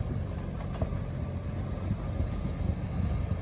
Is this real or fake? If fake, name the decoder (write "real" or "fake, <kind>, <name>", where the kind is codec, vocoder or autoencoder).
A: real